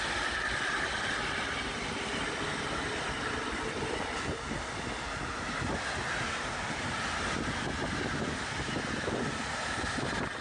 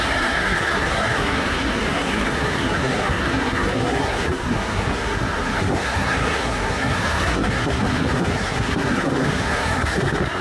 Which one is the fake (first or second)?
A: second